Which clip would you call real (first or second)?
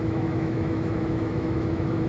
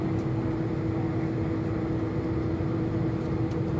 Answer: second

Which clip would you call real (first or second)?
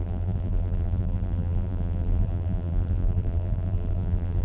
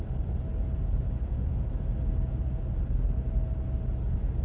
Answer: second